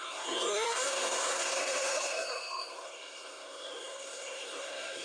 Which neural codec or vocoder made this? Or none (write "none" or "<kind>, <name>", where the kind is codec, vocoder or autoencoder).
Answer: codec, SNAC